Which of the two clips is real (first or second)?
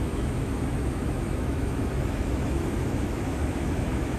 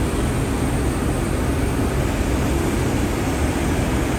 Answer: second